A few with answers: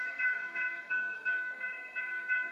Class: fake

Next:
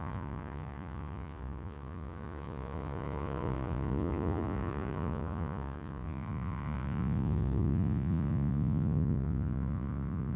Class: fake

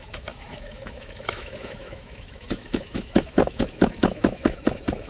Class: fake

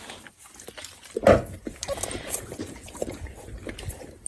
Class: real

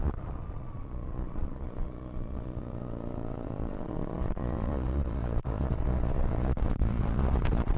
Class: fake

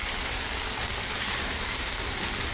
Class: real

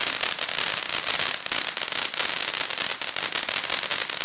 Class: real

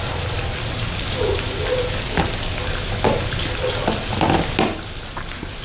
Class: real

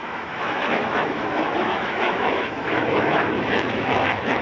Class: fake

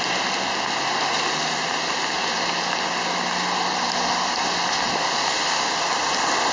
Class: real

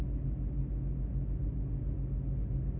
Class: real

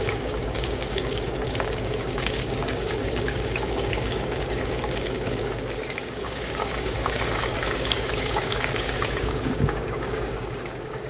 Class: fake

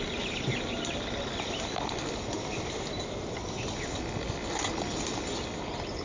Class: real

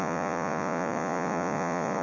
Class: fake